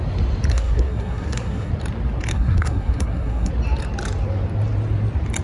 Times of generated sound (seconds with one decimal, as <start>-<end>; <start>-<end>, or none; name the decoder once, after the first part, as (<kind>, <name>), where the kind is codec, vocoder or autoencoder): 0.5-1.7 (codec, SNAC); 2.3-3.5